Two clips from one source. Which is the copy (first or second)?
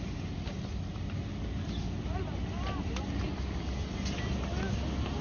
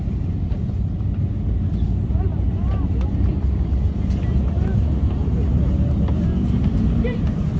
second